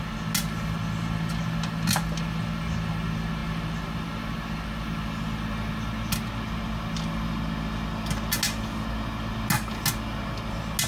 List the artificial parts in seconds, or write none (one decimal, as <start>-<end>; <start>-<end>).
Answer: none